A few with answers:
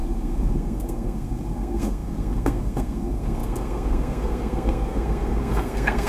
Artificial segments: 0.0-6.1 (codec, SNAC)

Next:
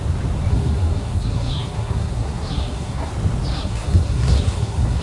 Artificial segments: 0.5-3.1 (codec, SNAC); 3.5-5.0

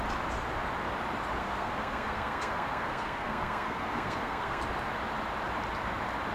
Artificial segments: 1.4-4.6 (codec, SNAC)

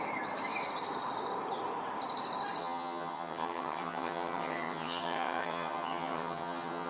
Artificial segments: 2.6-6.9 (vocoder, HiFi-GAN)